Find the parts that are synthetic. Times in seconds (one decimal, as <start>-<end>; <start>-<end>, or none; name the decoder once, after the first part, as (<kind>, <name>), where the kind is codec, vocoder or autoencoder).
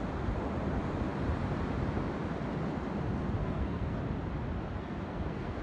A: 3.4-4.0 (codec, SNAC); 4.8-5.6